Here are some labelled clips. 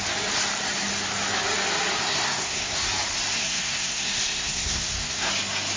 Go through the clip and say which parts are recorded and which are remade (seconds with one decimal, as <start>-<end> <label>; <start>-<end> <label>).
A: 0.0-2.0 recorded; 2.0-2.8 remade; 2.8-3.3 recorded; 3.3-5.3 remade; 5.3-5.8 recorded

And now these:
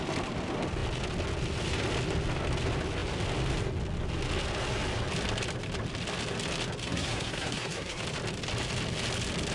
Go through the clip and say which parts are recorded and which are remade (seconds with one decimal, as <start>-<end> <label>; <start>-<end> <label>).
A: 0.0-6.8 recorded; 6.8-8.0 remade; 8.0-9.5 recorded

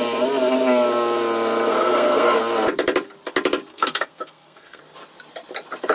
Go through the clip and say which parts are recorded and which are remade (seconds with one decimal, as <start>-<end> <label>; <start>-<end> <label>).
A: 0.0-1.7 recorded; 1.7-2.4 remade; 2.4-3.7 recorded; 3.7-4.8 remade; 4.8-5.9 recorded

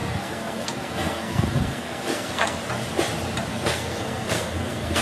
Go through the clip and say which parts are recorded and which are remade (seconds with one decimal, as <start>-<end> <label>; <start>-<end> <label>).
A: 0.0-2.6 remade; 2.6-3.5 recorded; 3.5-5.0 remade

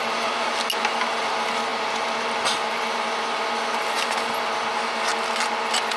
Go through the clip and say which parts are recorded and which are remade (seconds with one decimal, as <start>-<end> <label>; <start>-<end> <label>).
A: 0.0-6.0 recorded

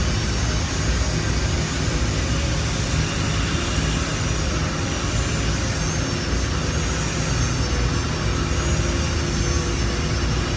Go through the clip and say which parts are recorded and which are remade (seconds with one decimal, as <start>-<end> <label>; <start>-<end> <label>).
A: 0.0-10.6 recorded